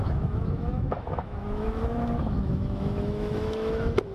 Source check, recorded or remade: remade